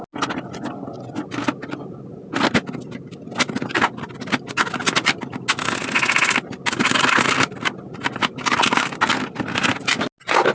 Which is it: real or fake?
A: real